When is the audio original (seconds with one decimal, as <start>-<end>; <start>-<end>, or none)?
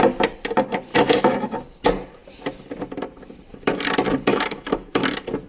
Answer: 0.0-0.9; 1.5-4.3; 5.0-5.5